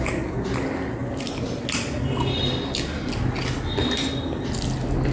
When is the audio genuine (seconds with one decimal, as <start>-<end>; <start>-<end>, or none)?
0.0-5.1